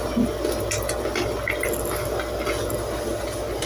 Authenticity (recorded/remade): recorded